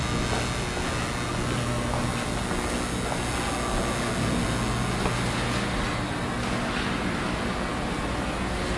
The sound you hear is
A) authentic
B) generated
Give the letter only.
A